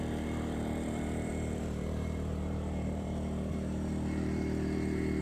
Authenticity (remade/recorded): remade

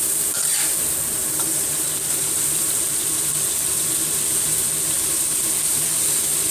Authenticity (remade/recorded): remade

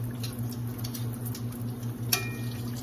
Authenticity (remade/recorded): recorded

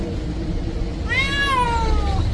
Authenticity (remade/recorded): recorded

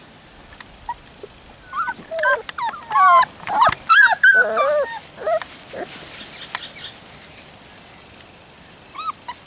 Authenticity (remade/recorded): recorded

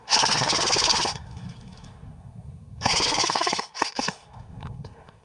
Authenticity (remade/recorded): remade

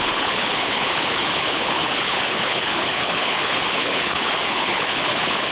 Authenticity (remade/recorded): remade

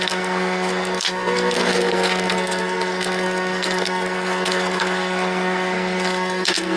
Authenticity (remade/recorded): remade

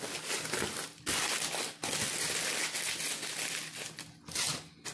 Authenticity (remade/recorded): recorded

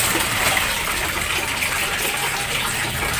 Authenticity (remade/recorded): recorded